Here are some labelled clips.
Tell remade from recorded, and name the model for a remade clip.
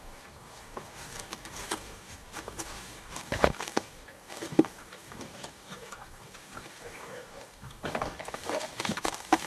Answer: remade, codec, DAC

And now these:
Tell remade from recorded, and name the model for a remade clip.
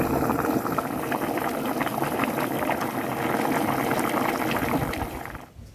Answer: recorded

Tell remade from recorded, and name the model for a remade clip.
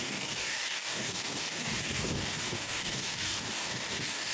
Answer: remade, codec, DAC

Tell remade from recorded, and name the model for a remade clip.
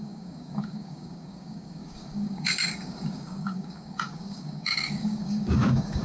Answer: remade, codec, DAC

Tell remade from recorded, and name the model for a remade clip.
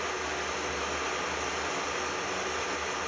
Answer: recorded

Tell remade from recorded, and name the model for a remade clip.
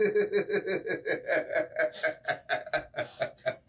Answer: recorded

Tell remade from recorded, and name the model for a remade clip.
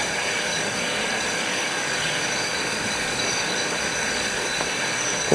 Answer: remade, codec, DAC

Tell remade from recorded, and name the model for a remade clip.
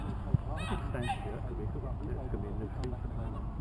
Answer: recorded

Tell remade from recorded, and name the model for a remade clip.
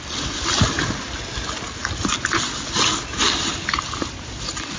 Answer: recorded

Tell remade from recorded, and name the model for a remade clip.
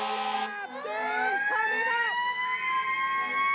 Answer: recorded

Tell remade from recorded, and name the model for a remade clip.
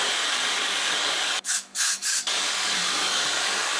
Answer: remade, codec, DAC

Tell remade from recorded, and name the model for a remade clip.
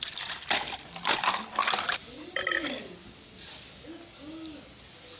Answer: recorded